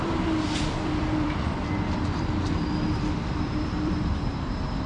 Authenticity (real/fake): fake